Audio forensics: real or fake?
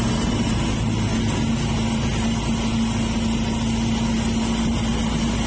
real